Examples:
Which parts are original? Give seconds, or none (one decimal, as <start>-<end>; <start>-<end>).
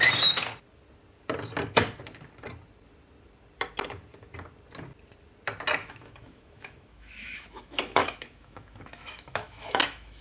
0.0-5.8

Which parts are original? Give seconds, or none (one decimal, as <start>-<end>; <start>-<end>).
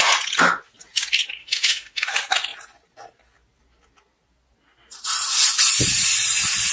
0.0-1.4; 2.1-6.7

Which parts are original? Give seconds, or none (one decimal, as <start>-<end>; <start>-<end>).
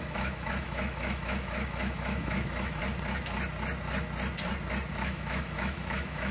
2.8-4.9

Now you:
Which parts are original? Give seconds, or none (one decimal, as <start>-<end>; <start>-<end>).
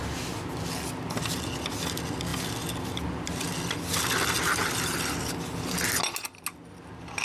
0.0-7.2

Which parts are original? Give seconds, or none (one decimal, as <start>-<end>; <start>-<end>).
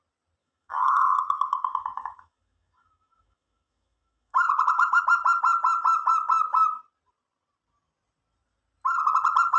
0.0-0.4; 5.0-9.6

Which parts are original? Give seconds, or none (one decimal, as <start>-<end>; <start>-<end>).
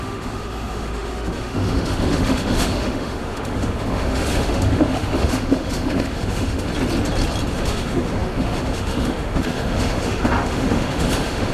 6.7-7.5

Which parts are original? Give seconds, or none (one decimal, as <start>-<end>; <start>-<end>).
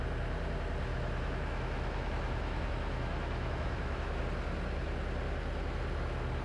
0.0-0.9; 4.2-6.4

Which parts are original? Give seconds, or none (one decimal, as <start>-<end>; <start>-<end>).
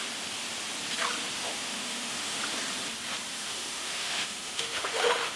0.0-1.4; 2.4-3.3